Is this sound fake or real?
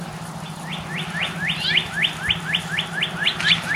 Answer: real